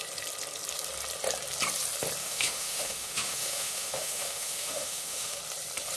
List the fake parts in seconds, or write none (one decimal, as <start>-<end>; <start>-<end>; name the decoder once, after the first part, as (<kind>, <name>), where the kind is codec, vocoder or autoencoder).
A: 2.2-5.4 (autoencoder, DAC-VAE)